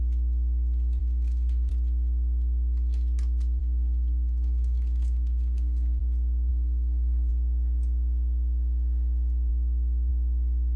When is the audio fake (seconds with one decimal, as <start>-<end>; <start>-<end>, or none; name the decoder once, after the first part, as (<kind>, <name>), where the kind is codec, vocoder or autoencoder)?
1.0-1.7 (codec, SNAC); 3.6-6.0; 6.5-7.3